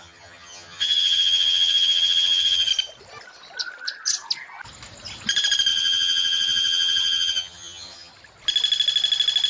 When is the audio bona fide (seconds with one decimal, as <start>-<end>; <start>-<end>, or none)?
2.7-5.7; 8.1-9.5